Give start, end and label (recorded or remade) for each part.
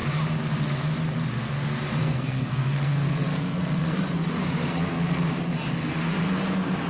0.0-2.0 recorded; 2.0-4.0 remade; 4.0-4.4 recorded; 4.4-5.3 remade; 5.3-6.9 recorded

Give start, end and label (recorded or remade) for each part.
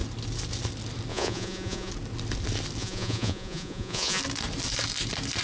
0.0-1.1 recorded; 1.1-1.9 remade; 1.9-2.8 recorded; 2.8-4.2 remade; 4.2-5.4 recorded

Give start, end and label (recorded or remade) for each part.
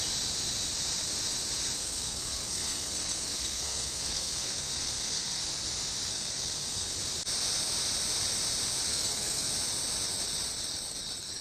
0.0-1.8 recorded; 1.8-5.4 remade; 5.4-6.1 recorded; 6.1-6.9 remade; 6.9-8.9 recorded; 8.9-9.5 remade; 9.5-11.4 recorded